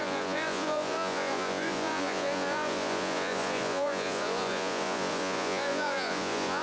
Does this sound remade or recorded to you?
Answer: remade